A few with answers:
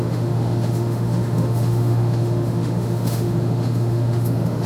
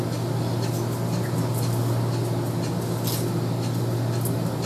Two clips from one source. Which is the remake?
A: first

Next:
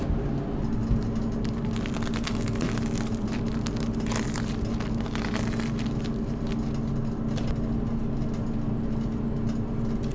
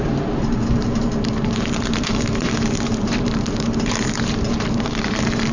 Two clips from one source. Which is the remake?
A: second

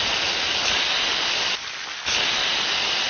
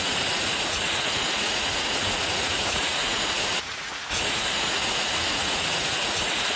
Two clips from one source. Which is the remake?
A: second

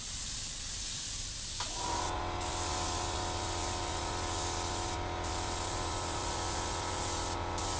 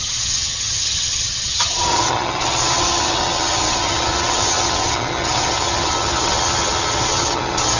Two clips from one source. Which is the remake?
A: second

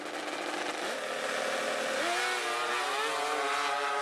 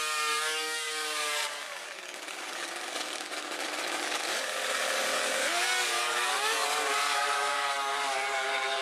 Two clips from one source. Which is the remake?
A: second